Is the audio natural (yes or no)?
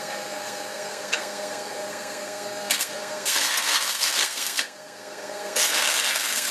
no